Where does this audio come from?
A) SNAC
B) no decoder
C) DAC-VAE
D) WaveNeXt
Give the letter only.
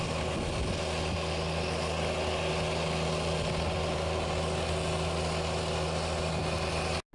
B